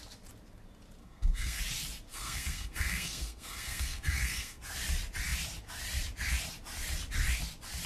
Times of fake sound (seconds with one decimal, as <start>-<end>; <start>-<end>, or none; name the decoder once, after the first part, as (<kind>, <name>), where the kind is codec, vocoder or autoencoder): 1.0-1.6 (codec, SNAC); 2.1-4.6